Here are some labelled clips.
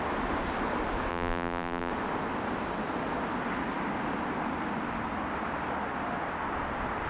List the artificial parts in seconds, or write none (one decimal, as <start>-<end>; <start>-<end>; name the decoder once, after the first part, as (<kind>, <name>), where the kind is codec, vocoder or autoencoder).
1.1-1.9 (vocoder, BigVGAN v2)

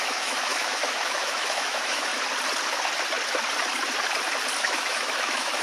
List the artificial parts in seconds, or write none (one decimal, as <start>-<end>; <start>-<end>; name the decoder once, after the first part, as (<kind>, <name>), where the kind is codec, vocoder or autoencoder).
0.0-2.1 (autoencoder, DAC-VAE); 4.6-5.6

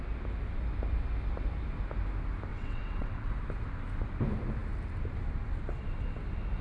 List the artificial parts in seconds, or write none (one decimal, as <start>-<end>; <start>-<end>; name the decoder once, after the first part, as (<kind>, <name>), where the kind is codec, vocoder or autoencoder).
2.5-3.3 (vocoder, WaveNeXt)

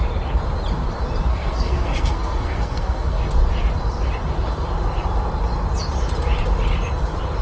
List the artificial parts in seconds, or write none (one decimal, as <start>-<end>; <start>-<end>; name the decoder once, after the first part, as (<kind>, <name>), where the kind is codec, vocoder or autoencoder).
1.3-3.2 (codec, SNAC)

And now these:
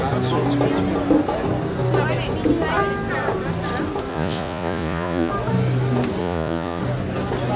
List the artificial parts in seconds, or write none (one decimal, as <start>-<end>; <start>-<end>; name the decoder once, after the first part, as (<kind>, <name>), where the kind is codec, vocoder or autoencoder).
4.1-5.3 (vocoder, Vocos); 6.2-6.8